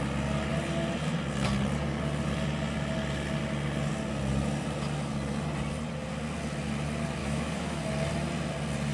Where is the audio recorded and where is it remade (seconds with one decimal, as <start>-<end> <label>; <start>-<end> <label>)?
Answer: 0.0-7.2 recorded; 7.2-7.8 remade; 7.8-8.9 recorded